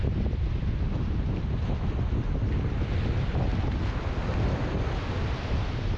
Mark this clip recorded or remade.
recorded